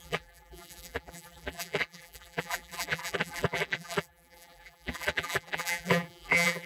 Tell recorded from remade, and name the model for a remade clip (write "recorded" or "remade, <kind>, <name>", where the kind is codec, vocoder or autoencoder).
remade, vocoder, BigVGAN v2